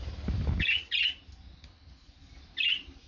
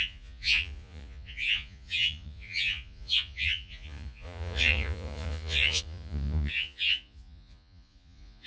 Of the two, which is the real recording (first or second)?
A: first